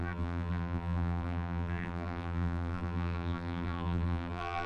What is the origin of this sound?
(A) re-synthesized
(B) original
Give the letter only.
A